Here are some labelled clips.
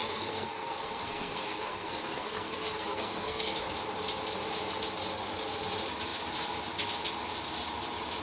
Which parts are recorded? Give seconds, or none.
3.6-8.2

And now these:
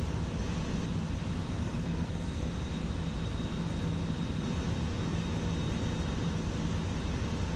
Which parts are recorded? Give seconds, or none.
0.0-1.6; 2.5-7.6